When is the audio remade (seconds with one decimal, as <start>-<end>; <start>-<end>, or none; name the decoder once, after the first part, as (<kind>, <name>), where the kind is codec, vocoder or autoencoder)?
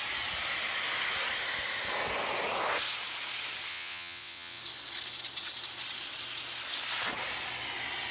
3.7-4.6 (vocoder, WaveNeXt)